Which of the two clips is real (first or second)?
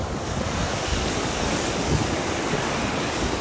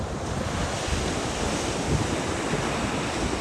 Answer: second